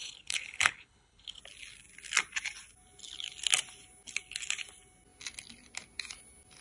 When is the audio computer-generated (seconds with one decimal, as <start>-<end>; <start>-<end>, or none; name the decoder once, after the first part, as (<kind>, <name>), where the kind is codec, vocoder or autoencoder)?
0.0-1.4 (codec, HILCodec)

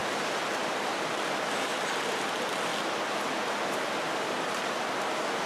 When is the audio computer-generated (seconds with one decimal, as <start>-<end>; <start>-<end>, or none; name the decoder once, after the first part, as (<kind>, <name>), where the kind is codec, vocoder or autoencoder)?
none

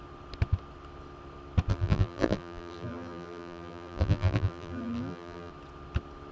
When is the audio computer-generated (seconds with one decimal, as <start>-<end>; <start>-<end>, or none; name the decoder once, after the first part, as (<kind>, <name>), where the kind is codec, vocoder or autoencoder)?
1.7-5.5 (vocoder, BigVGAN v2)

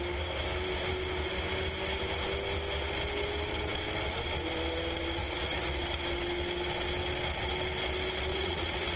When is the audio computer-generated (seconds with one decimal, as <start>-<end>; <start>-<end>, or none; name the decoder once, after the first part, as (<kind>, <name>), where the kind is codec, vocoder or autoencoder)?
5.2-5.8 (vocoder, Vocos); 8.3-9.0

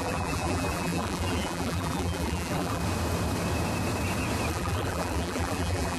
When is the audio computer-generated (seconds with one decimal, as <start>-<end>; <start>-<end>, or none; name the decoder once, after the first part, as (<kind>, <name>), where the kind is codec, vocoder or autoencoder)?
0.0-2.8 (vocoder, BigVGAN v2); 4.5-6.0

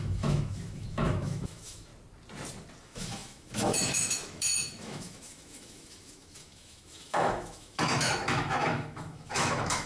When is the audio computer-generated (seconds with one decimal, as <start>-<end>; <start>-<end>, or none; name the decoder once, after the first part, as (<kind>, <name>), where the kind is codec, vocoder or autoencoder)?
0.0-1.9 (autoencoder, DAC-VAE); 2.8-9.9